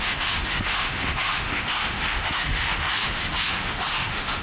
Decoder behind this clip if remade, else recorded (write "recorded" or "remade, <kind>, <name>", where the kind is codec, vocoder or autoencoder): remade, autoencoder, DAC-VAE